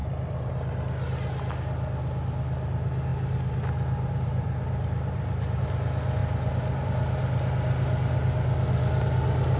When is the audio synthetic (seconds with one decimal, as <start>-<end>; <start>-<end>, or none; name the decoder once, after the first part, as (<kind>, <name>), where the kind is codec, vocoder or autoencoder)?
0.0-0.5 (vocoder, BigVGAN v2); 3.1-5.6; 6.2-6.8